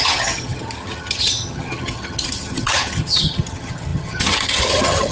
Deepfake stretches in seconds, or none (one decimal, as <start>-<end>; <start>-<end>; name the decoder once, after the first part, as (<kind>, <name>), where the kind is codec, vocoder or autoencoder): 0.0-5.1 (vocoder, HiFi-GAN)